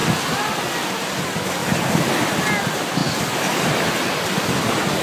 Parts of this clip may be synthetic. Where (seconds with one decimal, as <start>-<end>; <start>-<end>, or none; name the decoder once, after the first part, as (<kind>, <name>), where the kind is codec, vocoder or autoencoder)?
none